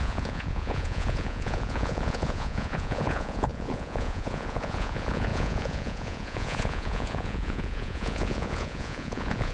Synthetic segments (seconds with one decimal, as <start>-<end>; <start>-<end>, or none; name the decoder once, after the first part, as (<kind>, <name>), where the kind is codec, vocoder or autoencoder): 0.0-9.5 (vocoder, Vocos)